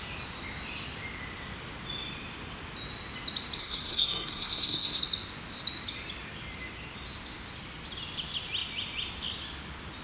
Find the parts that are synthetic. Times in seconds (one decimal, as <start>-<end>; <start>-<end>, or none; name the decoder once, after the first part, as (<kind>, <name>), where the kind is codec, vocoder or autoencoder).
3.6-5.0 (codec, SNAC)